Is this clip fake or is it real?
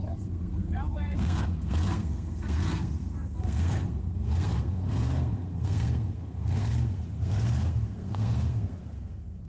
fake